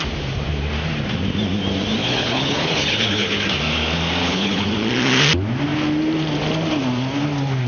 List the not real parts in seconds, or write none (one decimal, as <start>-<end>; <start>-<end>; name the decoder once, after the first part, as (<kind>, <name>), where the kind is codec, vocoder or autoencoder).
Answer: 2.0-3.3 (codec, HILCodec); 4.2-4.7